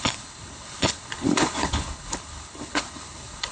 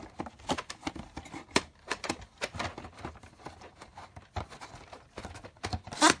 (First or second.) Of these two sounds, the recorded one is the second